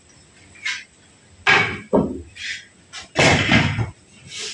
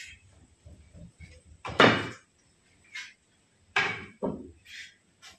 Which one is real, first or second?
first